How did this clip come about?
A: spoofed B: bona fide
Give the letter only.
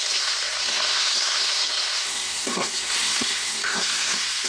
A